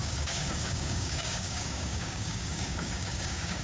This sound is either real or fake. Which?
fake